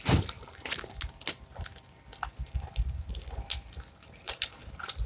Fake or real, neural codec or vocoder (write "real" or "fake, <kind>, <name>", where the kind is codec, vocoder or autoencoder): real